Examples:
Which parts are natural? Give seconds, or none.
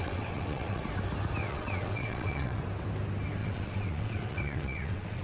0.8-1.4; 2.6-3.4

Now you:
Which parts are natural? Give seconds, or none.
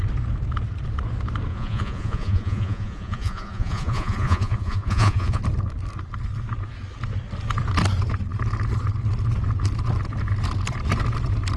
0.0-1.5; 5.4-11.6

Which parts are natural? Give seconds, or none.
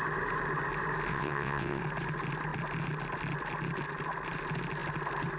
0.0-1.1; 1.8-5.4